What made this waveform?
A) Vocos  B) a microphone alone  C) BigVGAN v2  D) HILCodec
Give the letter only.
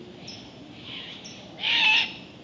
B